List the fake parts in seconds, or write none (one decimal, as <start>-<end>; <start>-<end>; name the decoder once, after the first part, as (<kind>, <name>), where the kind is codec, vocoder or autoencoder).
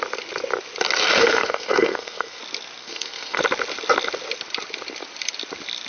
1.2-2.4 (codec, SNAC); 2.8-3.4